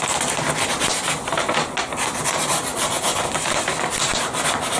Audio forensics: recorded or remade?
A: recorded